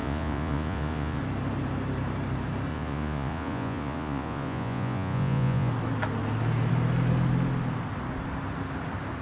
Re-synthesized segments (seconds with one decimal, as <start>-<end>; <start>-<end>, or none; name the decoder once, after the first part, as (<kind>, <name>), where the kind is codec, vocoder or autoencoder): 0.0-1.2 (vocoder, Vocos); 2.7-5.7